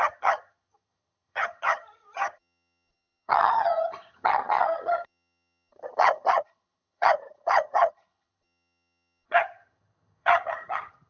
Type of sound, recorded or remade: remade